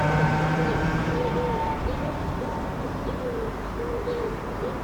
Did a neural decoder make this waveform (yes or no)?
yes